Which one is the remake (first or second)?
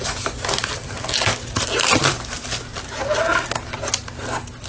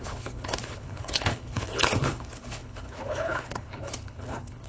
second